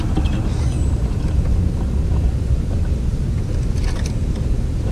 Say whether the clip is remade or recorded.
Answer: recorded